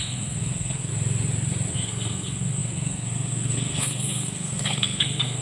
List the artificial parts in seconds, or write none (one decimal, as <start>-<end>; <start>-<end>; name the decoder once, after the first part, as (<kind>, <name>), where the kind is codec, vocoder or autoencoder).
0.0-0.9 (codec, SNAC); 1.7-5.4